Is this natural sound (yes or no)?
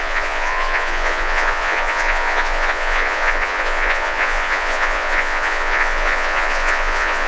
no